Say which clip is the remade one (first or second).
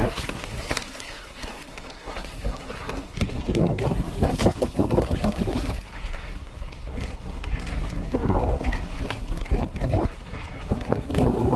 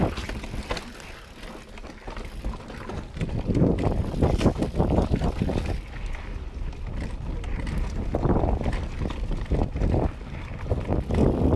first